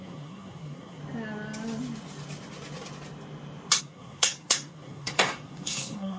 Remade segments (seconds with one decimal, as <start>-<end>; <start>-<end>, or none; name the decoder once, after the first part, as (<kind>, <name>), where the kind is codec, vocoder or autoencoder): 0.0-1.0 (codec, SNAC); 3.8-6.2